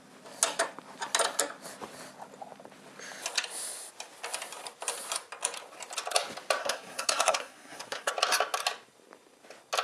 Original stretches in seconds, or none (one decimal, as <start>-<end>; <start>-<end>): 0.0-6.6; 8.1-9.8